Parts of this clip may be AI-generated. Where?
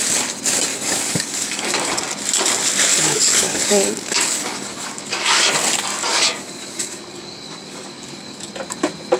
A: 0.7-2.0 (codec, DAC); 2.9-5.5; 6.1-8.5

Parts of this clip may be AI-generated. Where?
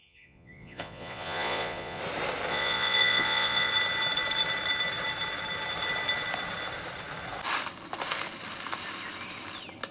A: 0.0-2.0 (vocoder, Vocos); 2.5-3.7